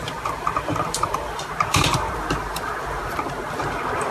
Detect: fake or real fake